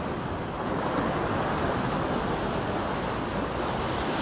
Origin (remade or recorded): recorded